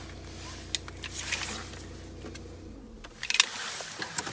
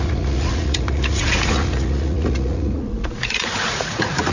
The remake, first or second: second